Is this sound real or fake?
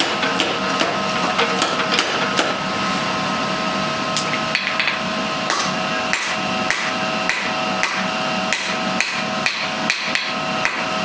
real